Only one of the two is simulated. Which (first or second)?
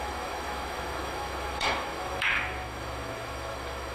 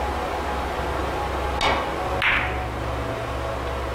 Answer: first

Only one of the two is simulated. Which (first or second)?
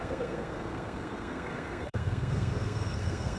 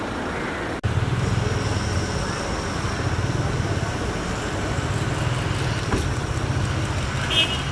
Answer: first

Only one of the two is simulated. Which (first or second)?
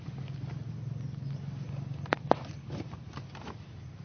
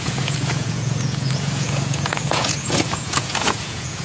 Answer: second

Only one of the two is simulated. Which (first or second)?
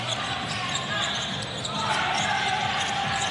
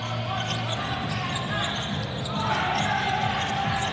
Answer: first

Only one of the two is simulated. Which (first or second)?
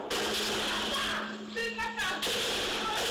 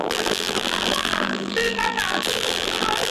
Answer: second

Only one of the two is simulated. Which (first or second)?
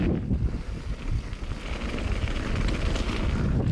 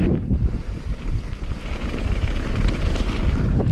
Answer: second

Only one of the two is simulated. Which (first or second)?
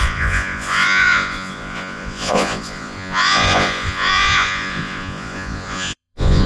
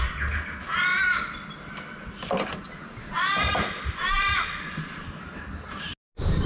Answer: first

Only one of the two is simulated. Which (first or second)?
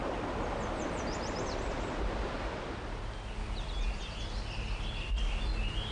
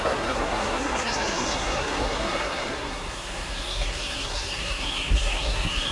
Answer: second